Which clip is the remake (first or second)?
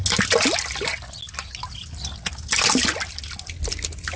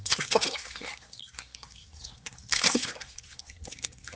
second